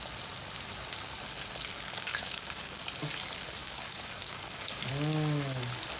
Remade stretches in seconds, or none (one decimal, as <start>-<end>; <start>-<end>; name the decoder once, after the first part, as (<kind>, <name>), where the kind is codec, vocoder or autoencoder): 1.7-2.8 (codec, DAC); 3.6-4.9

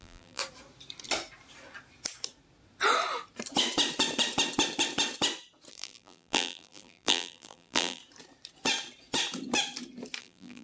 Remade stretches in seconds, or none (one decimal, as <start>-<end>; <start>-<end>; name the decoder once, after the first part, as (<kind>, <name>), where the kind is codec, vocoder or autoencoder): 0.0-0.4 (vocoder, BigVGAN v2); 5.7-8.0; 10.2-10.6

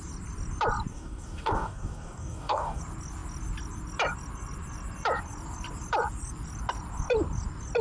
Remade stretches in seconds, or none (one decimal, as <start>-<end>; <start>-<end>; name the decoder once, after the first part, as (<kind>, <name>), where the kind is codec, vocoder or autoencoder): 0.9-2.8 (codec, DAC)

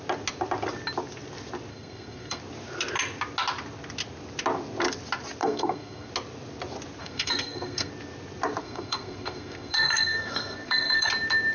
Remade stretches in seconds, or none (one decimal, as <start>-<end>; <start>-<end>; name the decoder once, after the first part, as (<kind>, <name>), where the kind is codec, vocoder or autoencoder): 1.7-2.4 (codec, SNAC); 5.4-6.1; 7.0-7.9; 8.6-11.1